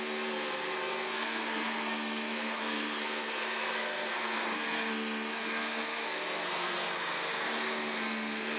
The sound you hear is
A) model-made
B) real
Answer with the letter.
A